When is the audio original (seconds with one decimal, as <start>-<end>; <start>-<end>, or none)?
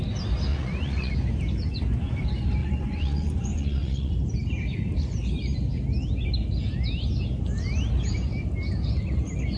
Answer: 0.0-0.5; 1.1-2.6; 4.1-9.6